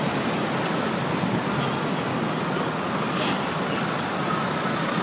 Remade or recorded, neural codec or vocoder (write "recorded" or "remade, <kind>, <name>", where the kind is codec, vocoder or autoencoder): recorded